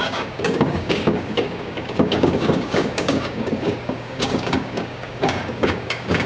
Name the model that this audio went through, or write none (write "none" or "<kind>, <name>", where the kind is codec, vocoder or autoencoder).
codec, DAC